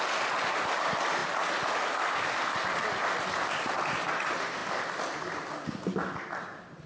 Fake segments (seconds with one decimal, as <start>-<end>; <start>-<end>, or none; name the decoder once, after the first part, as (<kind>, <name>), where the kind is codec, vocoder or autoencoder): none